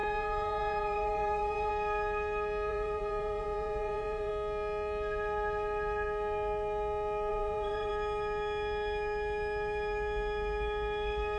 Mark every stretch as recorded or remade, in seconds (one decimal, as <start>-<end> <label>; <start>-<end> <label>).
0.0-1.7 remade; 1.7-2.7 recorded; 2.7-4.3 remade; 4.3-7.3 recorded; 7.3-7.9 remade; 7.9-11.4 recorded